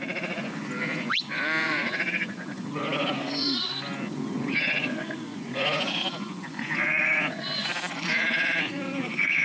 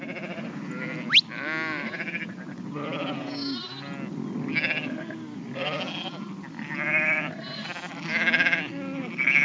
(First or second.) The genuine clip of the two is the second